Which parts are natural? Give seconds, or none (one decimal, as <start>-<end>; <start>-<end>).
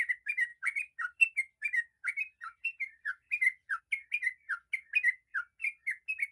0.0-0.5; 3.8-6.3